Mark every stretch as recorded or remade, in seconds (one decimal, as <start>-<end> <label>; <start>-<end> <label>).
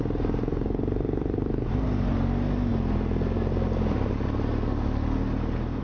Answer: 0.0-5.8 recorded